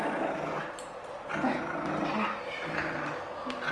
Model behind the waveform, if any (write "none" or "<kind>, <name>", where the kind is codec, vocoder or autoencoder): none